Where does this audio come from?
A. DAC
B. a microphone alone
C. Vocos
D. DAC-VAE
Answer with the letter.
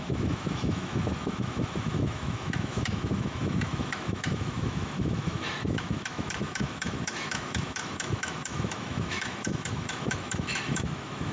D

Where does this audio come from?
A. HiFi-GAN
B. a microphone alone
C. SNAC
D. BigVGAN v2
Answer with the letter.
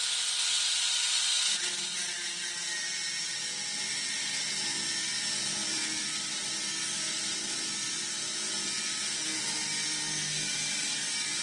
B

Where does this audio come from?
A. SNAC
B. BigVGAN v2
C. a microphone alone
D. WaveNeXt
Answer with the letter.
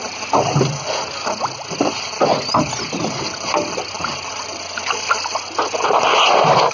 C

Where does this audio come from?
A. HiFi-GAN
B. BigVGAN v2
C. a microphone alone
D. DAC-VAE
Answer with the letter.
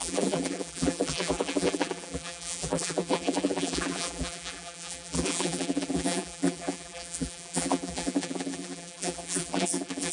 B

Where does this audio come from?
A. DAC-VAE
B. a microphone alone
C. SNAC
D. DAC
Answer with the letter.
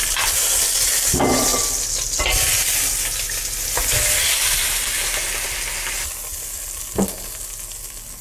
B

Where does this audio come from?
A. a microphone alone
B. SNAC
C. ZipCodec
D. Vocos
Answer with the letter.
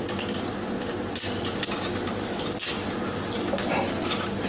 A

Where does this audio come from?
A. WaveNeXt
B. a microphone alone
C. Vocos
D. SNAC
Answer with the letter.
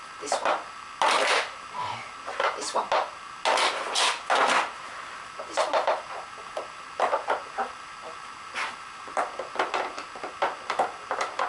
B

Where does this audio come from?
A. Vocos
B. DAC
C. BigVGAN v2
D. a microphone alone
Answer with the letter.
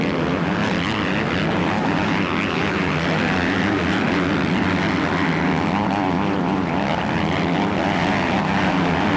D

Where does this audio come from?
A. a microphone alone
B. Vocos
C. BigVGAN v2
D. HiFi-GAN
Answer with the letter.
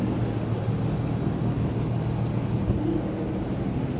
A